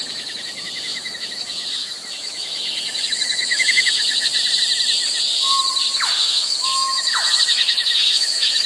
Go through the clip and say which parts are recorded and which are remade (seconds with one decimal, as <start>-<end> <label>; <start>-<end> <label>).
0.0-4.3 remade; 4.3-6.2 recorded; 6.2-8.7 remade